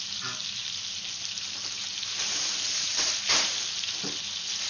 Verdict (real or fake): real